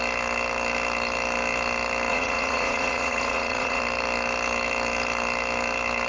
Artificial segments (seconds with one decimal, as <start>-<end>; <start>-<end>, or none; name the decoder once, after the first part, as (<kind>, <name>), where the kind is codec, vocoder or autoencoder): 2.1-3.8 (vocoder, Vocos)